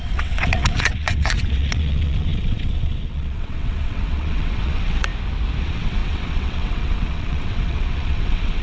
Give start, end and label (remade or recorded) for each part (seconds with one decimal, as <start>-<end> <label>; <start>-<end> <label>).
0.0-5.1 remade; 5.1-5.6 recorded; 5.6-8.6 remade